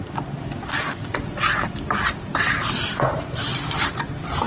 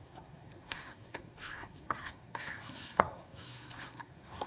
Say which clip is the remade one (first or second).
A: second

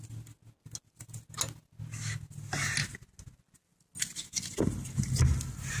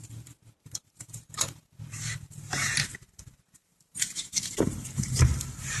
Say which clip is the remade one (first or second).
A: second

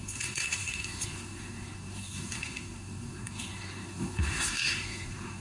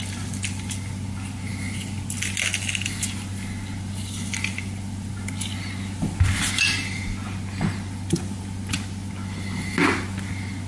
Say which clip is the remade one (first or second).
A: first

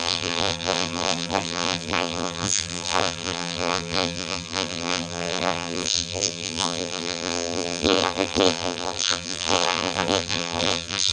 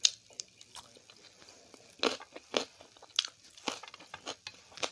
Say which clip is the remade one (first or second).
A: first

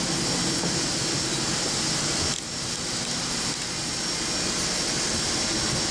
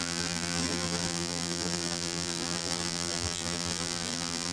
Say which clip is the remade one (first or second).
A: second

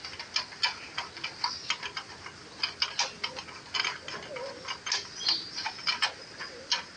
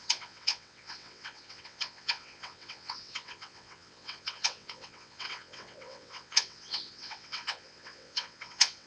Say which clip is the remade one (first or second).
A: second